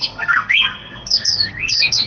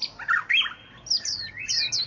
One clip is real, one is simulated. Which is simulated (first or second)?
first